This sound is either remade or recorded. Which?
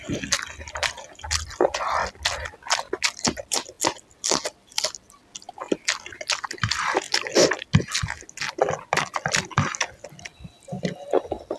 recorded